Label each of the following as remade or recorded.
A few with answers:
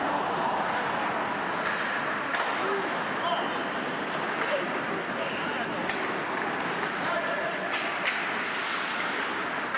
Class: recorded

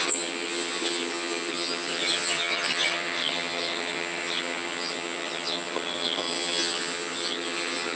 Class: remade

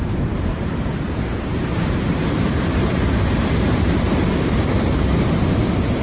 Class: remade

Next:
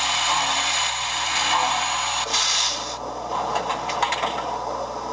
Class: recorded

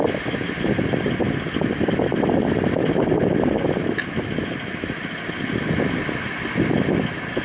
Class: recorded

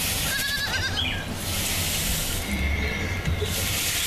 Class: recorded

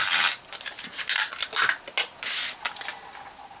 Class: recorded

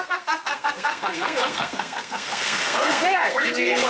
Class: remade